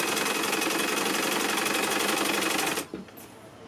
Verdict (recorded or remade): recorded